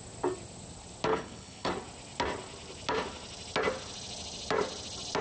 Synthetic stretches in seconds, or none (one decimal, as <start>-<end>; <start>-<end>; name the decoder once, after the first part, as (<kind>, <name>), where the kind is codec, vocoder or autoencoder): 1.1-1.7 (codec, HILCodec)